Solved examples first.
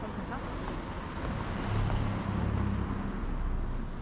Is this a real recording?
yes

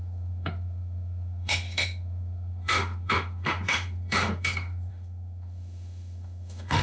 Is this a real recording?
no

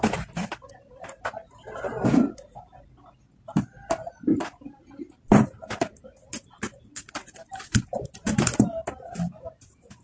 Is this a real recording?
yes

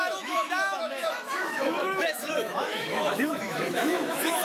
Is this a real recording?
no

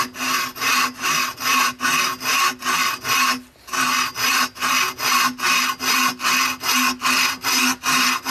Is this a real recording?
yes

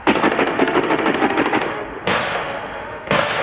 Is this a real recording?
no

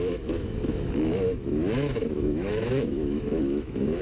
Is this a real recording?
no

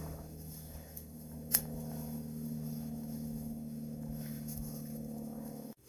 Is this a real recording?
no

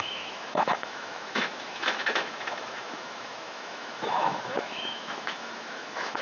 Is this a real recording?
no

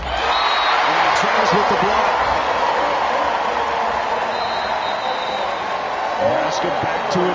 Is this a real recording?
yes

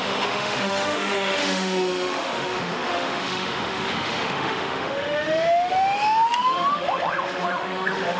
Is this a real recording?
no